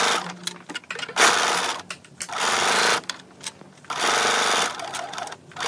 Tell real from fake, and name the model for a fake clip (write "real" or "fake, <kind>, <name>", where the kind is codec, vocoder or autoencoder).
real